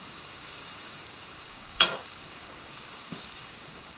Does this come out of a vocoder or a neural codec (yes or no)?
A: yes